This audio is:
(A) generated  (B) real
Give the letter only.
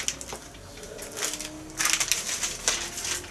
B